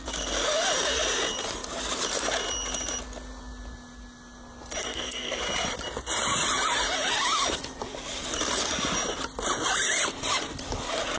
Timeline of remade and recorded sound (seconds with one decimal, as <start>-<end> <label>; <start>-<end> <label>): 0.0-4.8 recorded; 4.8-5.4 remade; 5.4-11.2 recorded